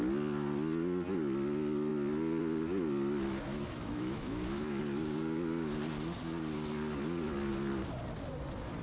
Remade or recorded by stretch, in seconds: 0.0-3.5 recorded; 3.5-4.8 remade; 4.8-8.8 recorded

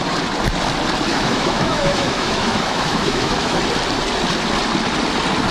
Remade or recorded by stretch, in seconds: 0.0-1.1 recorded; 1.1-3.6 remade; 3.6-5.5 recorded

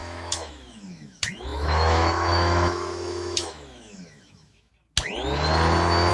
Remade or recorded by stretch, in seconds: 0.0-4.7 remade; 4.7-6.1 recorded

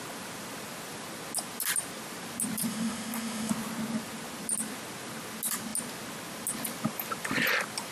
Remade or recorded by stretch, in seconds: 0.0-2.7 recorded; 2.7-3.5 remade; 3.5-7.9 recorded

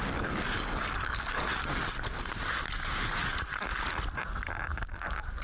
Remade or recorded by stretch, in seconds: 0.0-1.7 remade; 1.7-2.9 recorded; 2.9-3.5 remade; 3.5-5.0 recorded; 5.0-5.4 remade